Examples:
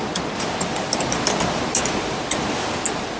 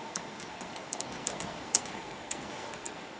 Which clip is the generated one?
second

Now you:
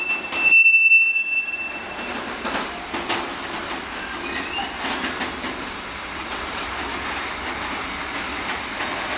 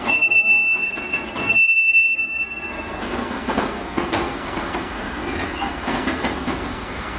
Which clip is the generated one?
second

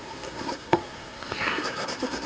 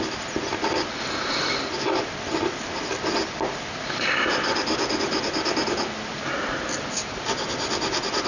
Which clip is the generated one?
first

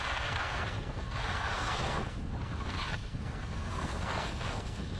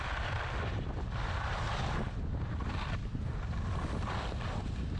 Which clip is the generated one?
first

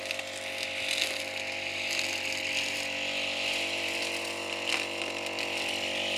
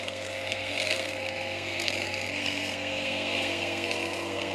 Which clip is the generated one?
second